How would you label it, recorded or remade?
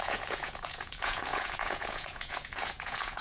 remade